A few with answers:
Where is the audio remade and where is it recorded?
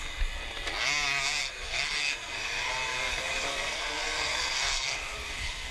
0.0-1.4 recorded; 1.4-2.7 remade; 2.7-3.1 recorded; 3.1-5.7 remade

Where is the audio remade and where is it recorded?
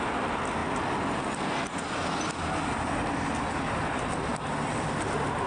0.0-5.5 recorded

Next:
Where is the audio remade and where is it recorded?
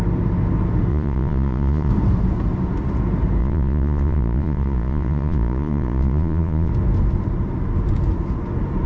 0.0-0.9 recorded; 0.9-1.9 remade; 1.9-3.4 recorded; 3.4-6.7 remade; 6.7-8.9 recorded